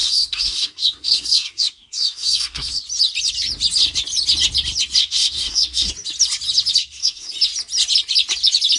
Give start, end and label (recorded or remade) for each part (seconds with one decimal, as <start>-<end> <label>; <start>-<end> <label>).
0.0-2.8 remade; 2.8-5.0 recorded; 5.0-5.9 remade; 5.9-6.8 recorded; 6.8-7.3 remade; 7.3-8.8 recorded